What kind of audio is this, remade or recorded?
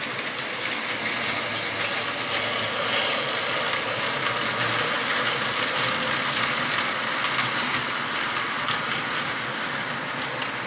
recorded